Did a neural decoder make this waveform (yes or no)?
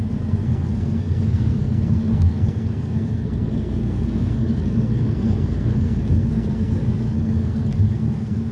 yes